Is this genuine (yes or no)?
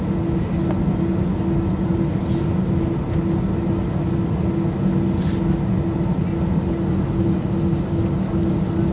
yes